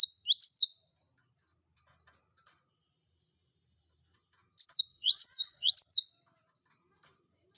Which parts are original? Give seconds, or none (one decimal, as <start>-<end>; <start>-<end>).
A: 0.0-4.9; 5.7-7.6